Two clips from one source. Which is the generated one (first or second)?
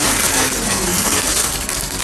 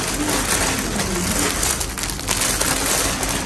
first